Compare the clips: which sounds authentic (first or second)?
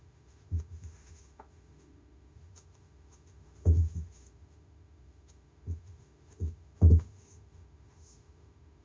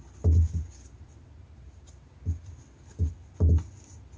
second